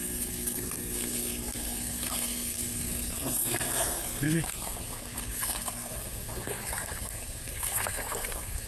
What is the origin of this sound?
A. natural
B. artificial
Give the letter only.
B